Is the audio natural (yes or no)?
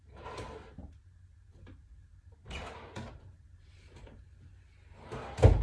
yes